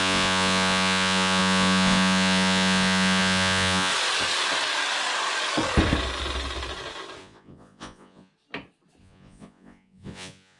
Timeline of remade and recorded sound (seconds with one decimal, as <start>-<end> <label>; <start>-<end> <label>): 0.0-3.9 remade; 3.9-7.2 recorded; 7.2-8.3 remade; 8.3-9.0 recorded; 9.0-10.6 remade